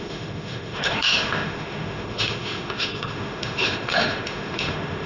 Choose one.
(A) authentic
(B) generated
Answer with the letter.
B